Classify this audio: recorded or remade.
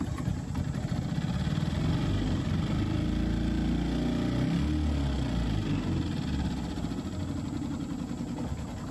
recorded